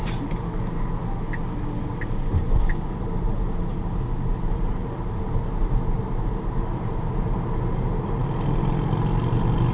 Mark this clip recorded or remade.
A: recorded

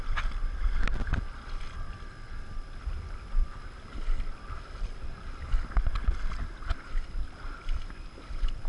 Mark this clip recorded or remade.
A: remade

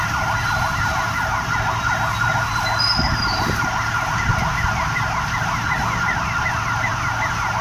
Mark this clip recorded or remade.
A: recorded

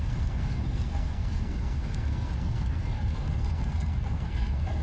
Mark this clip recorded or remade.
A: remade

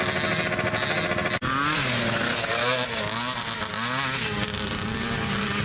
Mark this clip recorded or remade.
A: recorded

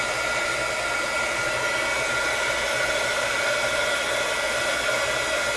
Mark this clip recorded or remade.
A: recorded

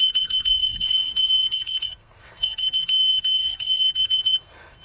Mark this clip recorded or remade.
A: remade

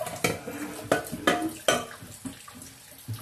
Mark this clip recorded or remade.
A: recorded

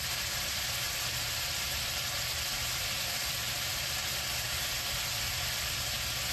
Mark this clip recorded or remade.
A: remade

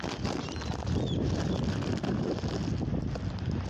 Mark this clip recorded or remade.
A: recorded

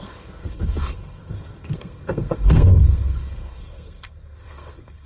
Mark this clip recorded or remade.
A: remade